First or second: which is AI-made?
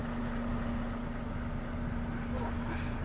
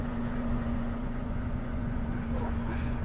second